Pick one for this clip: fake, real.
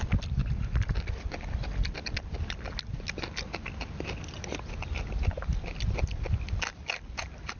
real